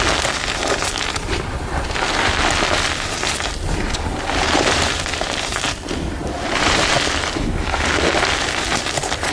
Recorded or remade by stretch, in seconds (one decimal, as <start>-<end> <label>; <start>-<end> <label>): 0.0-4.1 recorded; 4.1-4.9 remade; 4.9-6.2 recorded; 6.2-6.9 remade; 6.9-9.3 recorded